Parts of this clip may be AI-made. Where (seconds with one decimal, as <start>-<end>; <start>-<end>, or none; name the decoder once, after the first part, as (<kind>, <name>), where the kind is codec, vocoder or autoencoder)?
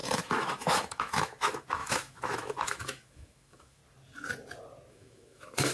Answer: 0.0-3.8 (autoencoder, DAC-VAE); 4.9-5.7